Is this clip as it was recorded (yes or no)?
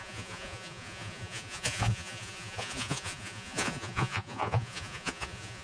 no